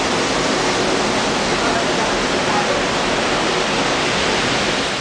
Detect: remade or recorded recorded